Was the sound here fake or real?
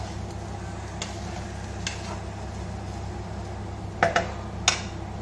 real